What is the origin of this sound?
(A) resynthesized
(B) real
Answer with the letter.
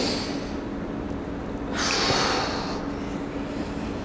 B